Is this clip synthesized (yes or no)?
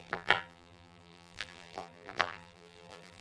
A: yes